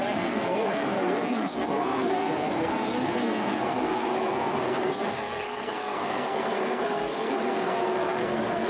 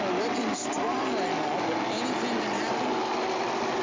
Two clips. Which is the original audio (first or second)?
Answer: second